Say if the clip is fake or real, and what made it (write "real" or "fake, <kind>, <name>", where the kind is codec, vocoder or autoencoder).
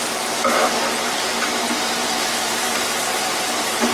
real